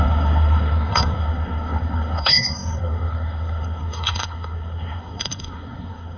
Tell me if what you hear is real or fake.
fake